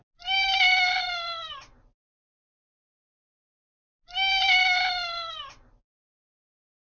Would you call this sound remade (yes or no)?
no